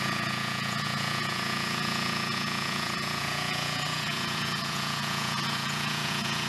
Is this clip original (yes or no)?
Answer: no